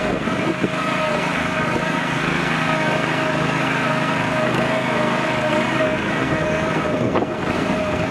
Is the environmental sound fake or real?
fake